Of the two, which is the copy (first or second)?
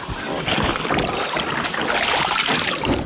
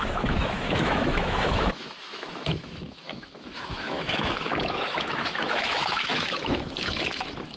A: second